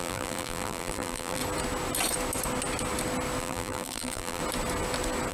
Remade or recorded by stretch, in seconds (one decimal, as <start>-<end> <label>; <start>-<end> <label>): 0.0-1.4 remade; 1.4-3.4 recorded; 3.4-4.4 remade; 4.4-5.3 recorded